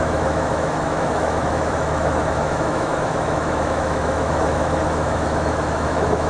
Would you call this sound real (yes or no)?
no